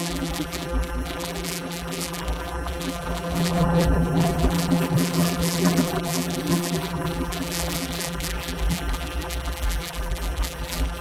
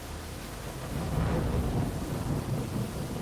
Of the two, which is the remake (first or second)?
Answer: first